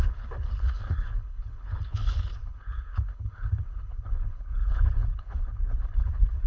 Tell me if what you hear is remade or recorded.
remade